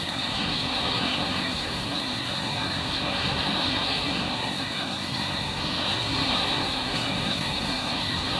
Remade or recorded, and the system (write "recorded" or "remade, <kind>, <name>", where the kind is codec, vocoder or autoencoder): remade, codec, SNAC